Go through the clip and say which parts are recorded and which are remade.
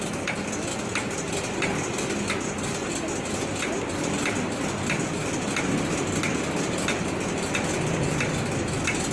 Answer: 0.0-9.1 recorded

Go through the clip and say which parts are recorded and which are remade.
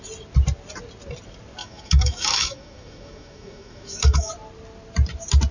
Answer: 0.0-1.6 recorded; 1.6-4.3 remade; 4.3-5.5 recorded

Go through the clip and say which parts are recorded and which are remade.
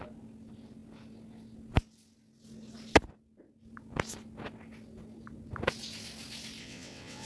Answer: 0.0-6.6 recorded; 6.6-7.3 remade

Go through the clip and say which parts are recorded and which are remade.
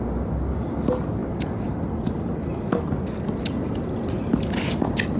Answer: 0.0-5.2 recorded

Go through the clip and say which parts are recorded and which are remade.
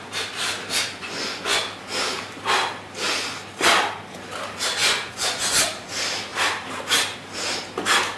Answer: 0.0-1.0 recorded; 1.0-1.6 remade; 1.6-4.8 recorded; 4.8-5.6 remade; 5.6-8.2 recorded